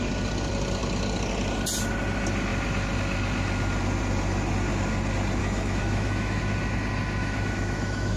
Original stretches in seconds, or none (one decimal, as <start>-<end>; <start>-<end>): 0.0-5.4; 6.4-7.2